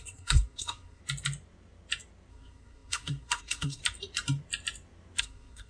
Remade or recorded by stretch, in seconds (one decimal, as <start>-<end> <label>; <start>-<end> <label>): 0.0-1.0 remade; 1.0-2.3 recorded; 2.3-3.8 remade; 3.8-5.2 recorded; 5.2-5.7 remade